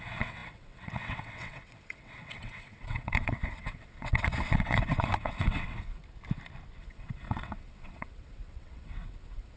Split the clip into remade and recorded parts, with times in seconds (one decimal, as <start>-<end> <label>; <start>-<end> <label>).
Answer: 0.0-6.0 remade; 6.0-6.8 recorded; 6.8-9.6 remade